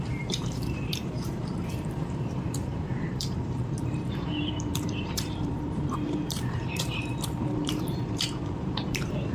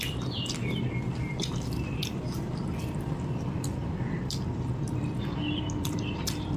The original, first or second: second